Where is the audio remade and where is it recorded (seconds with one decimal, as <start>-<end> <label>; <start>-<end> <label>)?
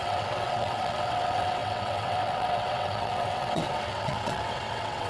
0.0-5.1 remade